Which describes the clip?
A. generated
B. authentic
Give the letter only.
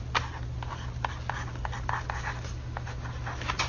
B